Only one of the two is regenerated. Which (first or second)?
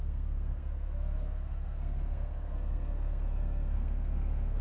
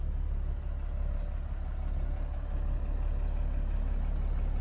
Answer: first